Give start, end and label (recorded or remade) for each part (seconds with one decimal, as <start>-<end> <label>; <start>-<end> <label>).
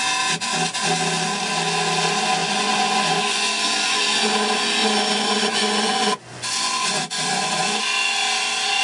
0.0-2.4 recorded; 2.4-4.0 remade; 4.0-4.8 recorded; 4.8-7.8 remade; 7.8-8.8 recorded